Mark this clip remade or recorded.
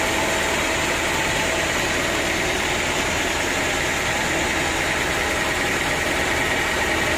recorded